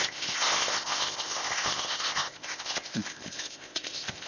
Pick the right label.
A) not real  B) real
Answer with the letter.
A